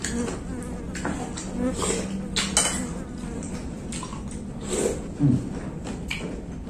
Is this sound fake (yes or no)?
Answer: no